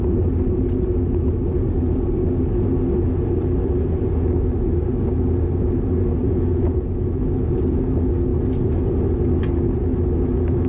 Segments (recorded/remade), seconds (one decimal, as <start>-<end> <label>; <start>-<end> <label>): 0.0-6.2 recorded; 6.2-6.9 remade; 6.9-10.7 recorded